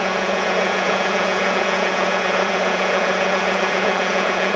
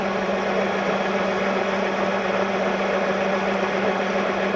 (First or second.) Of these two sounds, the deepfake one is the first